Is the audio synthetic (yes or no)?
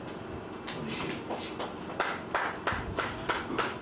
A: no